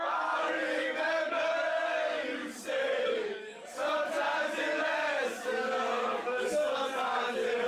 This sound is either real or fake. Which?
fake